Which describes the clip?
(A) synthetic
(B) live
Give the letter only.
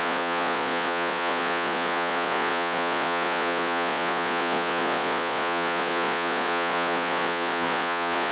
A